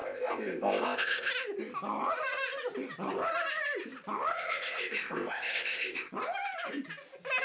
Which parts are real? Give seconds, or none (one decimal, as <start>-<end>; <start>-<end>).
1.3-4.3; 6.1-7.4